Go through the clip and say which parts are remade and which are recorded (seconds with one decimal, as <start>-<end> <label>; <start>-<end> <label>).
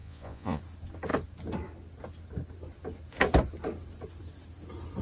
0.0-0.6 remade; 0.6-5.0 recorded